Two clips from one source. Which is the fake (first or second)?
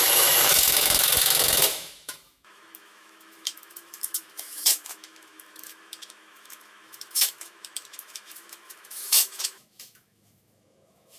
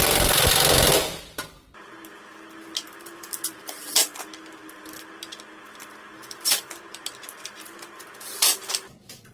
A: first